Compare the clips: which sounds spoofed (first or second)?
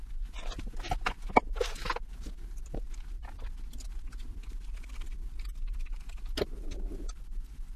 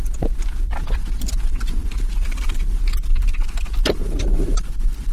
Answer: second